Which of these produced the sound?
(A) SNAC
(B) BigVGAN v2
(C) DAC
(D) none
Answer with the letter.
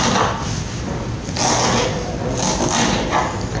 D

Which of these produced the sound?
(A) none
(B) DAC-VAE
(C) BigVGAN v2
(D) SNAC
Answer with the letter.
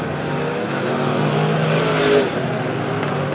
A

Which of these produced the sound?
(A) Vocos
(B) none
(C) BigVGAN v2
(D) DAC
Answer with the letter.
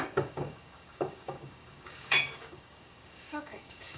D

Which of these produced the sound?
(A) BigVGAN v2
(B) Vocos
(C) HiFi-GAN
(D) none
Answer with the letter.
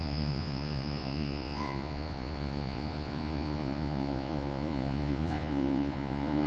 B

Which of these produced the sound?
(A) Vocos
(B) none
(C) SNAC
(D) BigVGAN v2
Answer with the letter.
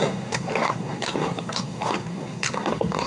C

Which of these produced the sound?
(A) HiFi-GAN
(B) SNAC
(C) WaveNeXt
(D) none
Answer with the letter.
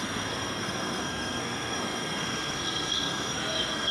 B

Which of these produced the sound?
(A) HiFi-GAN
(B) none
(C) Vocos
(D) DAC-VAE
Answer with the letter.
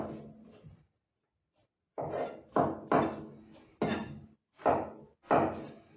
B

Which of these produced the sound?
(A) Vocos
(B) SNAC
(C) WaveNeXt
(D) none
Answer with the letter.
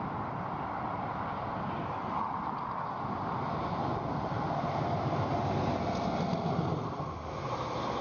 D